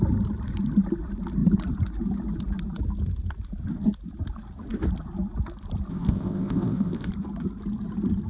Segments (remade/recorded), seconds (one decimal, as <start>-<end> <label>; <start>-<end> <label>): 0.0-5.9 recorded; 5.9-7.1 remade; 7.1-8.3 recorded